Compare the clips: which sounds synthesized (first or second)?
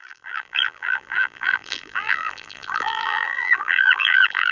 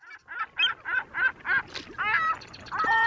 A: first